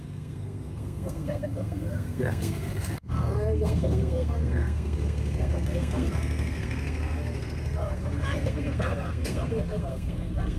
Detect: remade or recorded remade